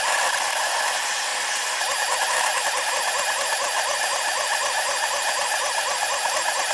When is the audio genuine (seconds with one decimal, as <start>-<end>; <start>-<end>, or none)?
0.0-6.7

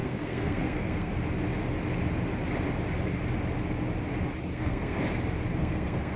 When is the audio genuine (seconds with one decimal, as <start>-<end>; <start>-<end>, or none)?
1.1-4.5; 5.0-5.6

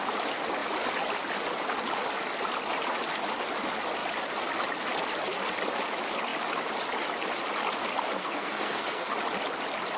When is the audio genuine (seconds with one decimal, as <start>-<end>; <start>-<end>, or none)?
0.0-8.2; 9.1-10.0

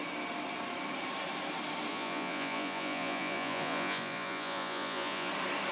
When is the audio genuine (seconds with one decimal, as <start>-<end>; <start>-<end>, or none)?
0.0-1.9; 5.3-5.7

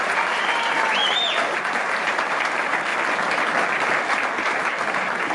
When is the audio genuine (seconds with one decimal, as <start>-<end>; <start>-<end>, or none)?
2.9-4.1

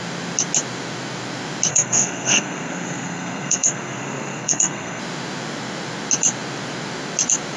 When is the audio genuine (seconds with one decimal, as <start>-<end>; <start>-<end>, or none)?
0.0-1.7; 5.0-7.6

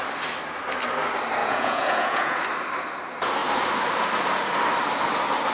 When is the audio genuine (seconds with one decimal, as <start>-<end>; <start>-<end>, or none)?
0.0-1.4; 2.4-5.5

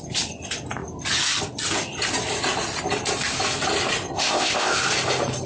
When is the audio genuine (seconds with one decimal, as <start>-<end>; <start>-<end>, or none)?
0.0-4.2; 4.8-5.5